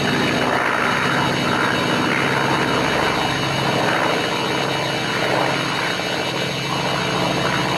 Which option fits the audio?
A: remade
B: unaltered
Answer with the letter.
B